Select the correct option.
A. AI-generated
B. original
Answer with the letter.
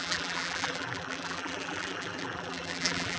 A